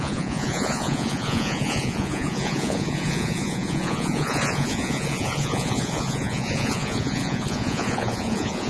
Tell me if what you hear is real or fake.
fake